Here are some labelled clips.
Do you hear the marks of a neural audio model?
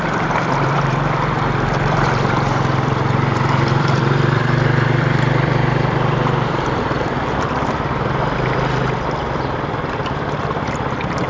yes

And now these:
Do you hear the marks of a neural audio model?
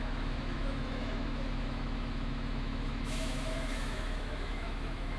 yes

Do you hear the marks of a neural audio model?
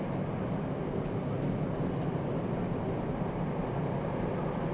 no